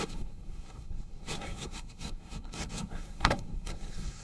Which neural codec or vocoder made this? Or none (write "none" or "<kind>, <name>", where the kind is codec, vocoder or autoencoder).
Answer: codec, SNAC